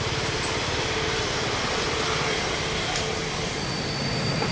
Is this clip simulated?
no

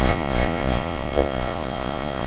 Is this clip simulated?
yes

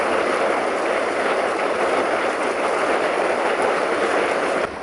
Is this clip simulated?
no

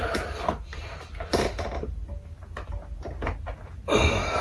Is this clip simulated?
no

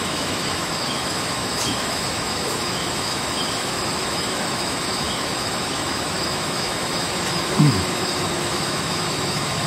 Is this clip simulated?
yes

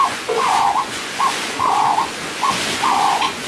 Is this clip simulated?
yes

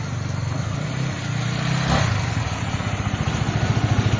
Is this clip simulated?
no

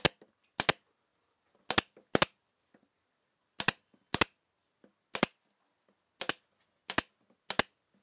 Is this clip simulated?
no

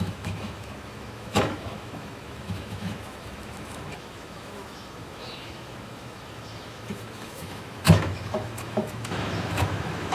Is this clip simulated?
yes